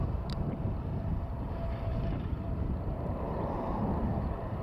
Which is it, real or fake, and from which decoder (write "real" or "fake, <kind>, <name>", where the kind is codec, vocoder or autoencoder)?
fake, vocoder, BigVGAN v2